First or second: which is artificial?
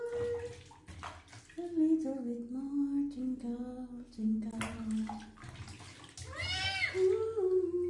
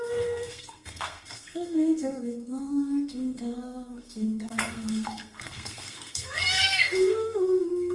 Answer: second